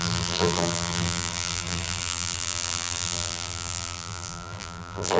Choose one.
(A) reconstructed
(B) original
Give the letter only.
A